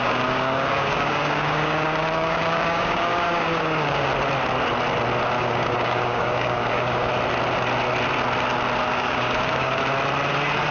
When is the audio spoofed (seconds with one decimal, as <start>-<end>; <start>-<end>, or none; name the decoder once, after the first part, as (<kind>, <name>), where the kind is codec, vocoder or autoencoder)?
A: 0.0-4.1 (codec, DAC); 5.4-7.1; 8.9-9.8